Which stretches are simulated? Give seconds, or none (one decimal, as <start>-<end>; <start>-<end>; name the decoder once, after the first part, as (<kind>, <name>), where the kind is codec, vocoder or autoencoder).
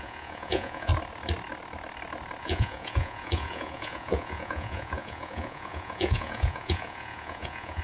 0.0-0.9 (vocoder, Vocos); 2.4-7.8